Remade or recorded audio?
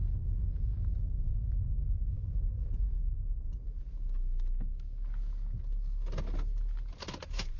recorded